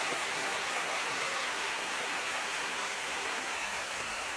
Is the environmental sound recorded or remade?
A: remade